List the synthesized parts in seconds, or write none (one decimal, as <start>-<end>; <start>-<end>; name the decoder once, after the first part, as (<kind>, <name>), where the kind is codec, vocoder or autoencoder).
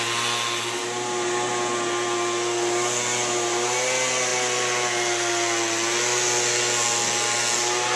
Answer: none